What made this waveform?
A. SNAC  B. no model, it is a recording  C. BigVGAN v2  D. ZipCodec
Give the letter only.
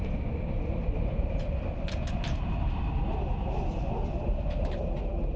B